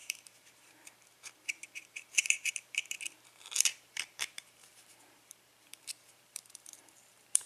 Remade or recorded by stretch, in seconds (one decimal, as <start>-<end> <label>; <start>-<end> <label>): 0.0-7.5 remade